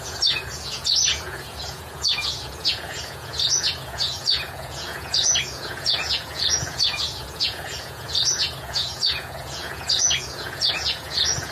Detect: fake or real fake